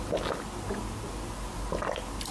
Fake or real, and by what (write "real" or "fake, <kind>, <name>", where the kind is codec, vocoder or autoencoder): real